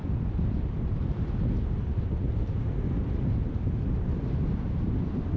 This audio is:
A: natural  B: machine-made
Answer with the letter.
B